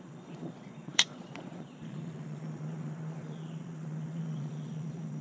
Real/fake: fake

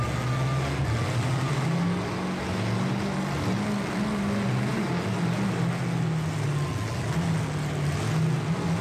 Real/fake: real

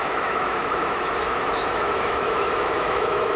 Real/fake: fake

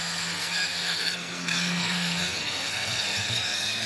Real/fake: fake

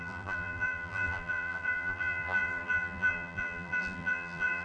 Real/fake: fake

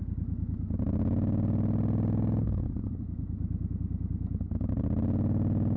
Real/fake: real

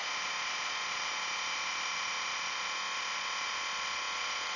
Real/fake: fake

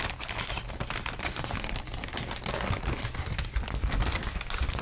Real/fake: real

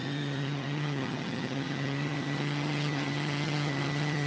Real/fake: fake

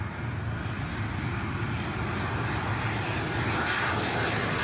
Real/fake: real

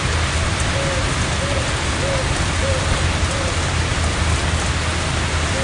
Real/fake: real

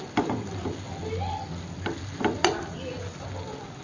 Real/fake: real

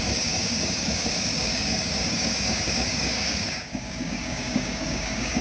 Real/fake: fake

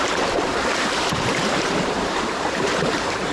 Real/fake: fake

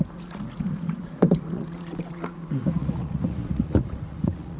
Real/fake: fake